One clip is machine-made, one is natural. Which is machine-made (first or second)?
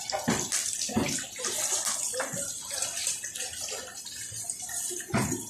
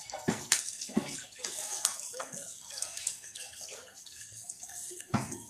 second